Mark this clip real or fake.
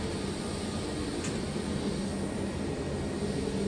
real